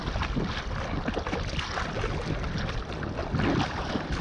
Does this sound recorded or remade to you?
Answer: recorded